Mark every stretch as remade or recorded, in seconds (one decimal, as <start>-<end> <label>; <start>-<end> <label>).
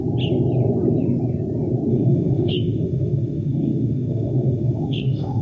0.0-1.9 recorded; 1.9-5.4 remade